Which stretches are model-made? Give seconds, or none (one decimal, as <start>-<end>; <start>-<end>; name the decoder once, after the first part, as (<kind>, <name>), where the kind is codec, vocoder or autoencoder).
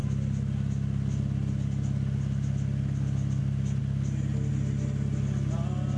none